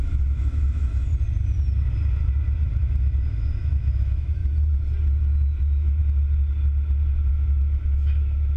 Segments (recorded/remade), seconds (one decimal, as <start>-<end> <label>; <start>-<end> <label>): 0.0-1.1 remade; 1.1-2.7 recorded; 2.7-4.4 remade; 4.4-5.6 recorded; 5.6-6.0 remade; 6.0-7.3 recorded; 7.3-8.6 remade